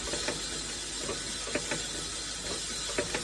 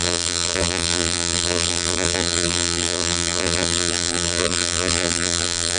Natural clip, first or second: first